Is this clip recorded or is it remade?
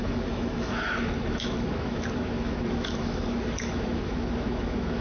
remade